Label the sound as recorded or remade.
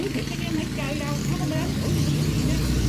recorded